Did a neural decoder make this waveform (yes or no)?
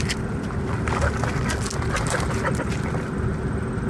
no